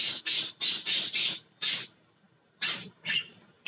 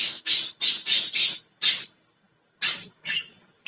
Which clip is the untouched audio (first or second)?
second